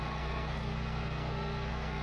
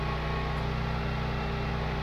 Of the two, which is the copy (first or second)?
first